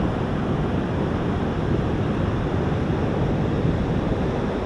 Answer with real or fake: real